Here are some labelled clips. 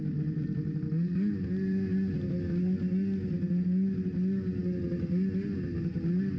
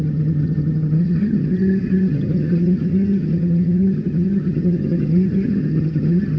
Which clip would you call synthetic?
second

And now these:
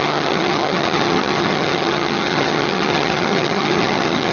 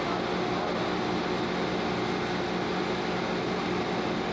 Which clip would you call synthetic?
first